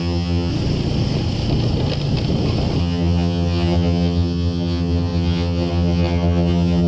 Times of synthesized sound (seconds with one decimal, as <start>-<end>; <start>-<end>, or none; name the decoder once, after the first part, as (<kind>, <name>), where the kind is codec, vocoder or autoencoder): 0.0-0.5 (vocoder, HiFi-GAN); 2.8-6.9